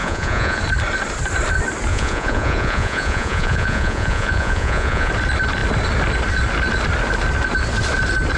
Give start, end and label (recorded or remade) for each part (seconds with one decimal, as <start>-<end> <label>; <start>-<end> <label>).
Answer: 0.0-0.6 remade; 0.6-1.9 recorded; 1.9-5.1 remade; 5.1-8.4 recorded